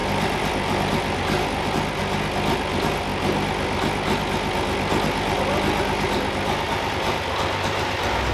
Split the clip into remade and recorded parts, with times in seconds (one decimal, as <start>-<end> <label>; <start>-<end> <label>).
0.0-1.7 remade; 1.7-8.3 recorded

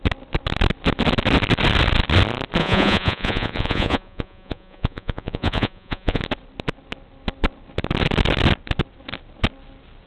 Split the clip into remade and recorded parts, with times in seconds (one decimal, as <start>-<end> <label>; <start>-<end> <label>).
0.0-2.6 recorded; 2.6-6.2 remade; 6.2-10.1 recorded

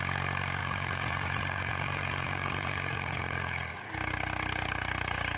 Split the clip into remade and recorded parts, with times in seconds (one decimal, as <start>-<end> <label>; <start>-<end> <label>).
0.0-0.6 recorded; 0.6-3.8 remade; 3.8-5.4 recorded

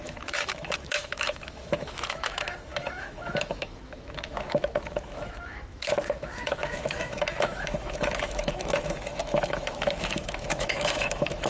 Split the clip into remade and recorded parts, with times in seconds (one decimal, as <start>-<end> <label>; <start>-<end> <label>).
0.0-11.5 remade

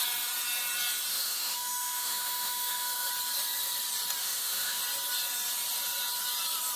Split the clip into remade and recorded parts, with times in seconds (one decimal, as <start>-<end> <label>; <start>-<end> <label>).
0.0-1.1 recorded; 1.1-3.1 remade; 3.1-4.2 recorded; 4.2-4.8 remade; 4.8-6.8 recorded